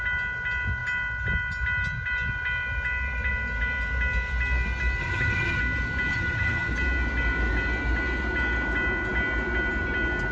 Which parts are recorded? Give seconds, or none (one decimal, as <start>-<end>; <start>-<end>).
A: 0.0-5.0; 5.6-6.1; 6.7-10.3